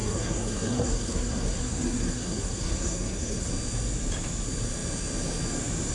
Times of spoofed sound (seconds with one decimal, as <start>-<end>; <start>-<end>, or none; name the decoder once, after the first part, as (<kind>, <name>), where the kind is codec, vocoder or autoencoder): 0.0-3.5 (codec, SNAC)